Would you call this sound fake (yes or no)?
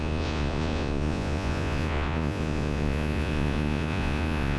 yes